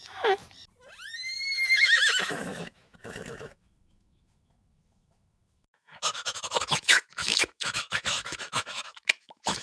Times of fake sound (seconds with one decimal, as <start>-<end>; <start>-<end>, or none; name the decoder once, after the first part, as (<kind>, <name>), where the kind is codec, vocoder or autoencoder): 0.0-0.4 (autoencoder, DAC-VAE); 1.8-9.6